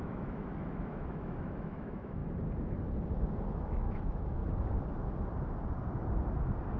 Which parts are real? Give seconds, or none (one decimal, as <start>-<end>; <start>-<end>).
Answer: 2.2-3.5; 4.4-6.8